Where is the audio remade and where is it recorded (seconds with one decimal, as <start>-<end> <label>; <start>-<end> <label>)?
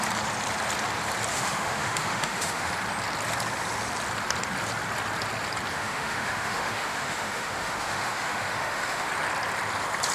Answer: 0.0-1.3 recorded; 1.3-2.7 remade; 2.7-5.7 recorded; 5.7-9.1 remade; 9.1-10.1 recorded